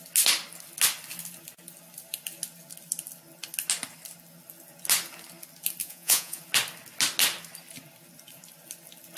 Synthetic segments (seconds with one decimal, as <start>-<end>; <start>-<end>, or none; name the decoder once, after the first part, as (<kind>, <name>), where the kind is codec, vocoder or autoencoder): 5.8-6.4 (vocoder, Vocos)